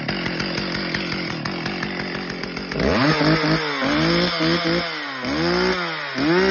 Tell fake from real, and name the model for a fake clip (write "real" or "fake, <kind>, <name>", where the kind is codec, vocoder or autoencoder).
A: real